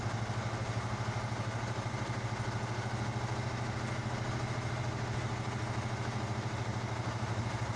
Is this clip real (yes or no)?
yes